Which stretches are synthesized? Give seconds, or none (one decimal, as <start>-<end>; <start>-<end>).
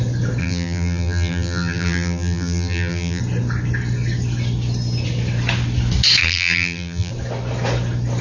0.4-3.2; 6.2-7.1